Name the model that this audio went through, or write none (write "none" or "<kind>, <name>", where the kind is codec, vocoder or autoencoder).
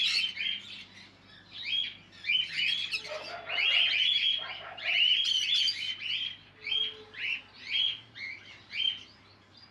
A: none